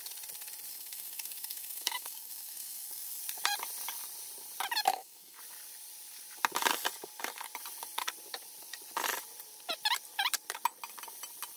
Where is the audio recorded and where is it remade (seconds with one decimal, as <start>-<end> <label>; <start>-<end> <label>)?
0.0-0.7 recorded; 0.7-3.2 remade; 3.2-4.9 recorded; 4.9-5.4 remade; 5.4-11.6 recorded